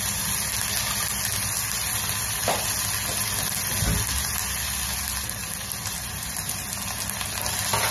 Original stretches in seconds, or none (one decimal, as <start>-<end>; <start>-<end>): 0.0-7.9